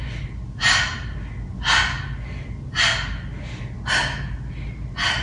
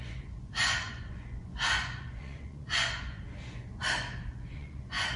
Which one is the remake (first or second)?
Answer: second